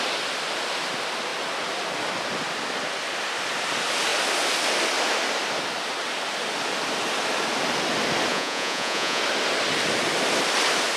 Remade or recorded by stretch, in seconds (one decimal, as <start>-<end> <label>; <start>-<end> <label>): 0.0-8.3 recorded; 8.3-9.2 remade; 9.2-11.0 recorded